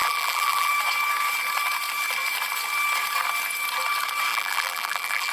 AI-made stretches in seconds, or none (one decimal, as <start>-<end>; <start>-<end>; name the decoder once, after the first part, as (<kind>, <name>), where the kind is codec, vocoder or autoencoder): 0.0-0.7 (vocoder, BigVGAN v2); 4.3-5.3